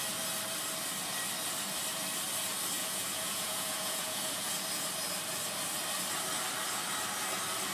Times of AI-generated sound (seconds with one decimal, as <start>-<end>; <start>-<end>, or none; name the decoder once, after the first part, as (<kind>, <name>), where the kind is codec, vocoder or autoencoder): 2.8-4.5 (vocoder, Vocos)